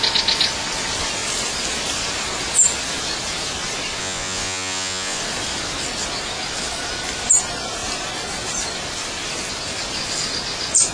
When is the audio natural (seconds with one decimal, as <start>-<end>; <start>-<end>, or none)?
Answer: 0.0-4.0; 5.2-10.9